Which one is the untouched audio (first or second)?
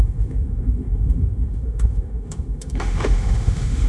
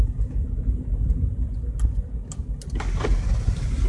second